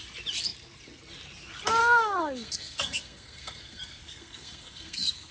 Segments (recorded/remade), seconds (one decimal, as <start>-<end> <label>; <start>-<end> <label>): 0.0-1.8 recorded; 1.8-5.3 remade